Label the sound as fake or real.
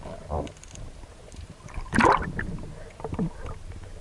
real